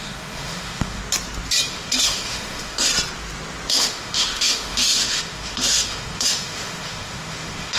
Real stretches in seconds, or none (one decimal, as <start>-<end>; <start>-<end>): 1.0-1.7; 2.9-3.7